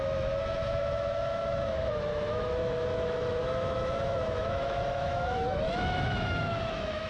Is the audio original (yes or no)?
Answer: no